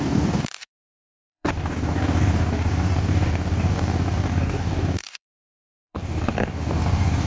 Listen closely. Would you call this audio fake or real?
fake